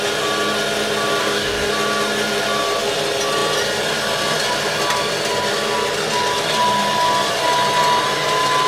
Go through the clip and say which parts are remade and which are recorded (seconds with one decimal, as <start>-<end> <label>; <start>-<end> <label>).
0.0-1.2 recorded; 1.2-1.7 remade; 1.7-8.7 recorded

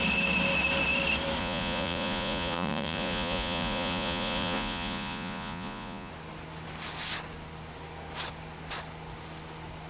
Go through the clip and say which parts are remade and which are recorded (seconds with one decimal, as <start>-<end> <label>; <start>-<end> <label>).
0.0-1.4 recorded; 1.4-6.1 remade; 6.1-9.9 recorded

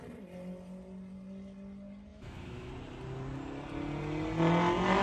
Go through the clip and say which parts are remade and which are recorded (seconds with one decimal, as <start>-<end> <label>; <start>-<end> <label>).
0.0-2.1 recorded; 2.1-2.7 remade; 2.7-5.0 recorded